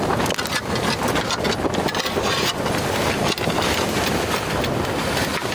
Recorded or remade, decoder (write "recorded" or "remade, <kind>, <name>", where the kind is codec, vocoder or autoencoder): recorded